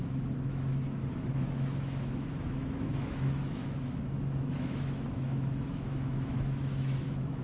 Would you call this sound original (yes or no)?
no